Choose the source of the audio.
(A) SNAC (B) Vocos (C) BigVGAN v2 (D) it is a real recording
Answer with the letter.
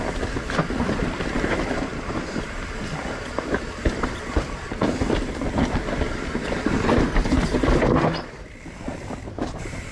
C